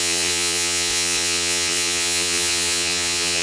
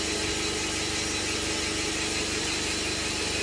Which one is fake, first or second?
first